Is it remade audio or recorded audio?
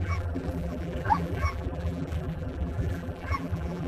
remade